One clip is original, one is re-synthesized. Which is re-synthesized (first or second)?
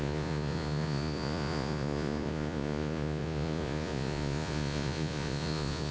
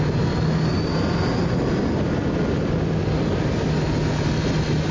first